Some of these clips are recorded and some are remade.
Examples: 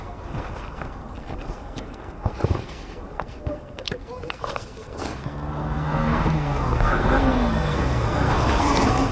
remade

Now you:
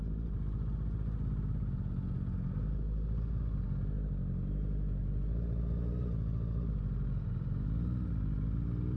recorded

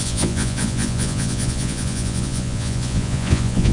remade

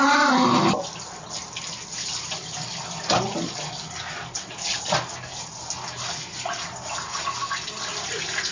recorded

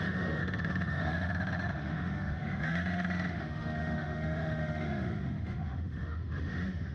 remade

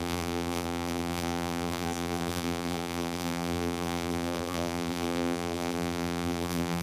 remade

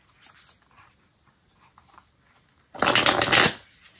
recorded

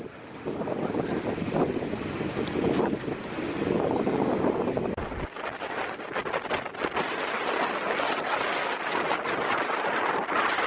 recorded